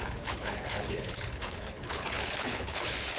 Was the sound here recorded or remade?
remade